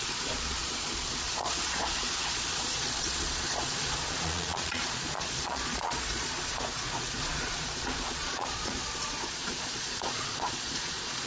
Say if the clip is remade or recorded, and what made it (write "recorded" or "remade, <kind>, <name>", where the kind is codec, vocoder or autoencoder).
remade, vocoder, Vocos